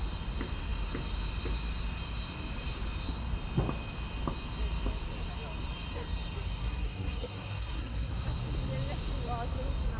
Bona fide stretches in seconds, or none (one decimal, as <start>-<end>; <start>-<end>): 0.0-6.6; 8.1-10.0